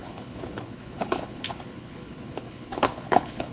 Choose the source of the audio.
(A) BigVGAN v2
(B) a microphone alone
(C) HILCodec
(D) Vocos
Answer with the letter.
C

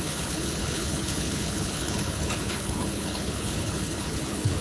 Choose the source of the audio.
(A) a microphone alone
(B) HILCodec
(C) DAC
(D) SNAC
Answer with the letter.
B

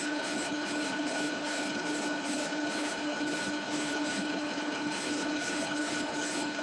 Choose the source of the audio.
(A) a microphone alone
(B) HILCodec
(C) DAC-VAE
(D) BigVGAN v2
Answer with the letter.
B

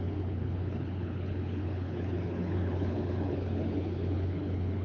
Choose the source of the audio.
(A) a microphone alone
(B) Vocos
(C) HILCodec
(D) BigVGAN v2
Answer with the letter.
C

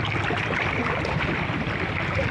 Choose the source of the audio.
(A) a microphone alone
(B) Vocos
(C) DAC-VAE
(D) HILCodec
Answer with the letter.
A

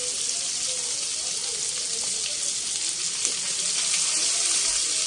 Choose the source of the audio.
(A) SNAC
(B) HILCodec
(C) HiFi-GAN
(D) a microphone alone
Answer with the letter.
D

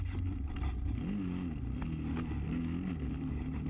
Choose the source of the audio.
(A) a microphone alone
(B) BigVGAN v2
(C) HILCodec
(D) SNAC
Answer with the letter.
A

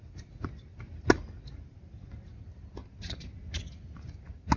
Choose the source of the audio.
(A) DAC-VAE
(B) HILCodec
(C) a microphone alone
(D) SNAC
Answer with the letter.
C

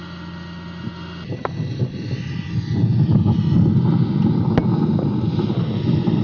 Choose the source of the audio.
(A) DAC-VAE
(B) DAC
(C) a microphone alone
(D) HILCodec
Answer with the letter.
C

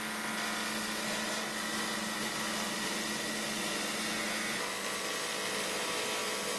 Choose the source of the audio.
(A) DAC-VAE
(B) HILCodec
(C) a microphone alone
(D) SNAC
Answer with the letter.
C